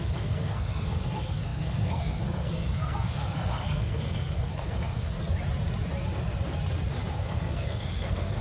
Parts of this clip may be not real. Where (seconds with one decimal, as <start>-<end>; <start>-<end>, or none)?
0.0-5.2; 7.1-8.4